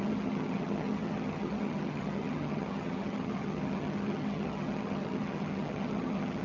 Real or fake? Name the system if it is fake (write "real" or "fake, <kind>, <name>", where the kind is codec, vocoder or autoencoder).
fake, vocoder, HiFi-GAN